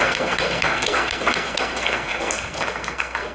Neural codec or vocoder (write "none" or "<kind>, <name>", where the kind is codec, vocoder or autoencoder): codec, SNAC